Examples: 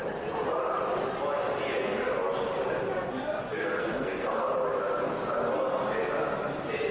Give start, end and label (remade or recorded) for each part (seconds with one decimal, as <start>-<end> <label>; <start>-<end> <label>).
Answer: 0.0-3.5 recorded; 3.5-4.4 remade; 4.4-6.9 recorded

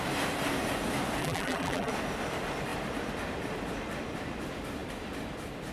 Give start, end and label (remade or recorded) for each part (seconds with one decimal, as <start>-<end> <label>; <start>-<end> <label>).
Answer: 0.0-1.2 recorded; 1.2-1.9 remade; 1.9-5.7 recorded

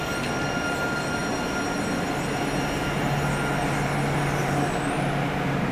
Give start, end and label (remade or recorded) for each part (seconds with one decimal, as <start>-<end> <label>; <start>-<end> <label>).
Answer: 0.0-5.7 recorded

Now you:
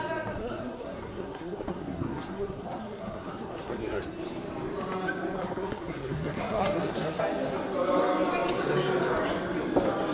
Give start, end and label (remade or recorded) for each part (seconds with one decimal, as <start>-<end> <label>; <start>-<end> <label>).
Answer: 0.0-0.4 recorded; 0.4-4.0 remade; 4.0-5.4 recorded; 5.4-7.2 remade; 7.2-10.1 recorded

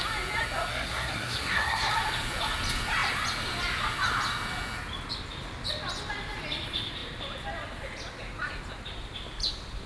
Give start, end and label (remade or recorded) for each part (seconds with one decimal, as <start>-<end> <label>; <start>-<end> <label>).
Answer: 0.0-0.7 recorded; 0.7-1.9 remade; 1.9-9.9 recorded